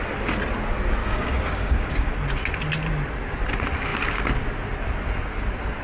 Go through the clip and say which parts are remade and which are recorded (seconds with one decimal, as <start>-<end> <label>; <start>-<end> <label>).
0.0-1.0 recorded; 1.0-2.1 remade; 2.1-5.8 recorded